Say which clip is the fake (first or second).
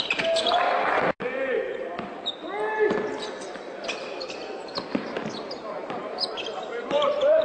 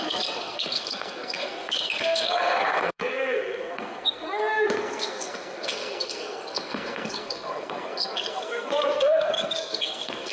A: second